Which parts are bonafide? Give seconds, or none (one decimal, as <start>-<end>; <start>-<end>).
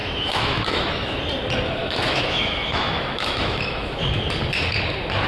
1.2-1.8; 4.0-5.3